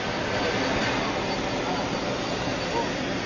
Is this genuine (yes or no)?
yes